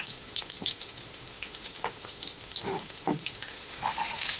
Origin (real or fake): fake